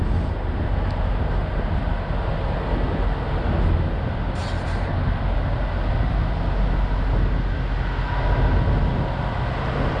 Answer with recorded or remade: recorded